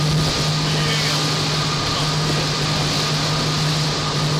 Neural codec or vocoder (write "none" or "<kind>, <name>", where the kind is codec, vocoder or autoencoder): none